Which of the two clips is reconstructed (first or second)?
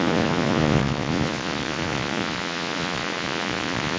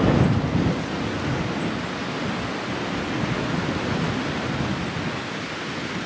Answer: first